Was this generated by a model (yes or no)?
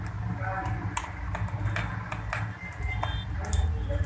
no